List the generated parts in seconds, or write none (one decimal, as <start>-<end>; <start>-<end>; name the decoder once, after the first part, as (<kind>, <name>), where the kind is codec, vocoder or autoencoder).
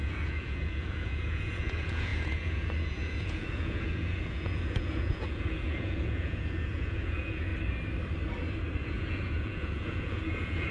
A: 0.0-7.5 (vocoder, Vocos); 8.8-10.7